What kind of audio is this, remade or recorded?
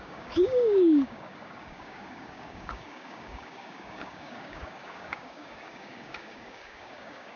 remade